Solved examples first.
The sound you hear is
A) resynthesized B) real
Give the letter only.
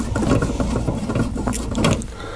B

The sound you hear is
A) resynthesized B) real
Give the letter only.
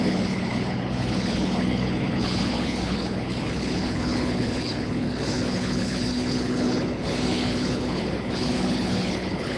A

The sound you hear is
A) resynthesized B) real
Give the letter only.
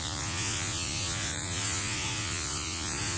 A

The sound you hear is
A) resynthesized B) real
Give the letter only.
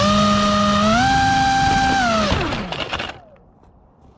B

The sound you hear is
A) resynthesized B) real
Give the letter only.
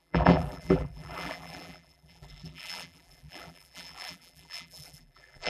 A